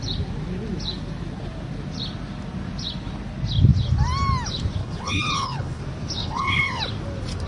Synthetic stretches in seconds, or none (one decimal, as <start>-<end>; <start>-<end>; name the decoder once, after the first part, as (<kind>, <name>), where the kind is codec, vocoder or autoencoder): 4.8-5.8 (codec, HILCodec); 6.2-6.8

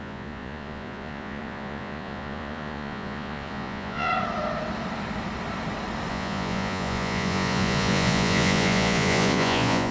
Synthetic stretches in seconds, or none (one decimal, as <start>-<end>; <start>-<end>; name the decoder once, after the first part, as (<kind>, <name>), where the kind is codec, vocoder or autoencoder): 0.0-4.1 (vocoder, Vocos); 6.1-9.9

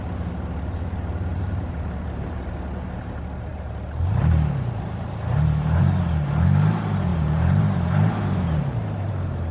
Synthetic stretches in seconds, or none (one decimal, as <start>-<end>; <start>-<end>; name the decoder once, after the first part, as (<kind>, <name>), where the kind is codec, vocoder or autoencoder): 1.3-2.4 (vocoder, BigVGAN v2); 3.5-6.1; 7.1-9.1

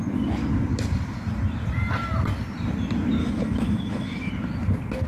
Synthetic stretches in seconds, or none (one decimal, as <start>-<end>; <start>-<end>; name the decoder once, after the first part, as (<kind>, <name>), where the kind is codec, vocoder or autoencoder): 3.2-4.3 (autoencoder, DAC-VAE)

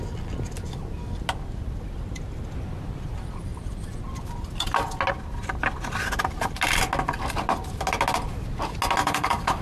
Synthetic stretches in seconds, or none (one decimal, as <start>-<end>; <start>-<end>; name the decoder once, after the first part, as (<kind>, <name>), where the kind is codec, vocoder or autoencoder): 9.0-9.6 (codec, DAC)